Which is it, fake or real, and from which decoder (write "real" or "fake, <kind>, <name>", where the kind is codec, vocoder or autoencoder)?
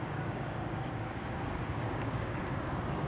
fake, codec, DAC